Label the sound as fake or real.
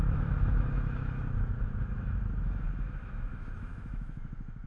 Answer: fake